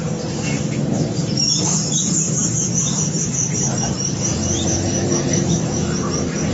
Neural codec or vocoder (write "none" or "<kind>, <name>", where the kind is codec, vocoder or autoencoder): vocoder, BigVGAN v2